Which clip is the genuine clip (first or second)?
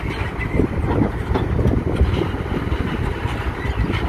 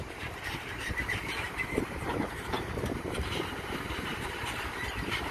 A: first